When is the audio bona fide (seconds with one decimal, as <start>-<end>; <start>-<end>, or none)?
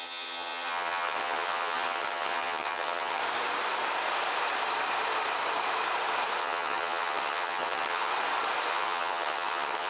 3.2-6.4; 8.1-8.7